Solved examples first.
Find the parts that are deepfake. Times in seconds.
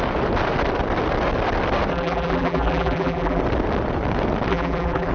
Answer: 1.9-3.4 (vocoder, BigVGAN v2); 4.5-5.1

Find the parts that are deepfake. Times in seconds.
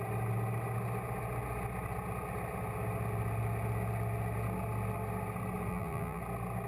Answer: 5.7-6.2 (vocoder, BigVGAN v2)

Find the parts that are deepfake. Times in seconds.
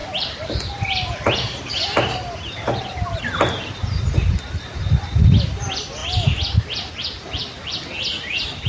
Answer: 0.0-4.0 (vocoder, BigVGAN v2); 6.0-6.9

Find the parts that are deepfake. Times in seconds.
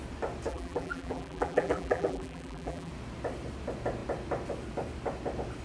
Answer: 0.5-2.9 (vocoder, BigVGAN v2)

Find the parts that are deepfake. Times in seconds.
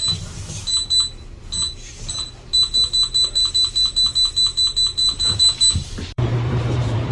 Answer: 5.0-7.1 (vocoder, BigVGAN v2)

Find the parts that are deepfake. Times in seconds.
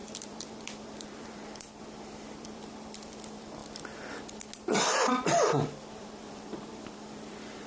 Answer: 0.0-3.6 (vocoder, BigVGAN v2); 5.1-7.7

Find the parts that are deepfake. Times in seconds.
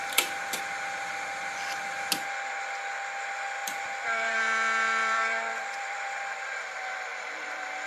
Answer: 0.0-0.6 (vocoder, BigVGAN v2); 3.6-7.9